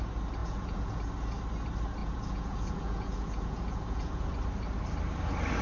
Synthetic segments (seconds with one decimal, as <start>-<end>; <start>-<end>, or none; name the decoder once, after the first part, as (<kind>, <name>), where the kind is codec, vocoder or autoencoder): 0.4-1.0 (vocoder, Vocos); 2.0-4.4